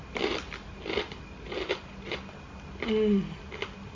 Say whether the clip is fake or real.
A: real